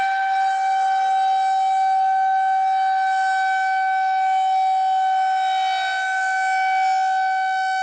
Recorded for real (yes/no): yes